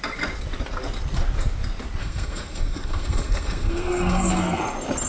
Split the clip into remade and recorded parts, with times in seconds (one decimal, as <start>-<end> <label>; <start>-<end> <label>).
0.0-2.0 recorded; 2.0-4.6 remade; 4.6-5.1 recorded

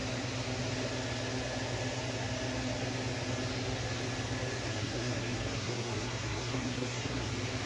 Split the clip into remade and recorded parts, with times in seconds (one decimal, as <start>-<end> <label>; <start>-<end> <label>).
0.0-4.7 recorded; 4.7-7.3 remade; 7.3-7.7 recorded

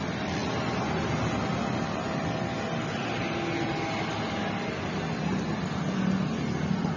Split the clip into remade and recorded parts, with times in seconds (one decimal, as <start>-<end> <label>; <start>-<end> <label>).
0.0-7.0 recorded

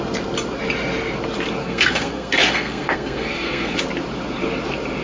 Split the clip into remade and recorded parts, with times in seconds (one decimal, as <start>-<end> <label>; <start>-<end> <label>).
0.0-1.6 recorded; 1.6-3.8 remade; 3.8-5.0 recorded

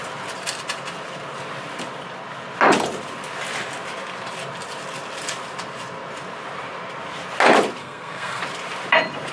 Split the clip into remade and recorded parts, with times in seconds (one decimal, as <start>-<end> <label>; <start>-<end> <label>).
0.0-7.8 recorded; 7.8-8.4 remade; 8.4-9.3 recorded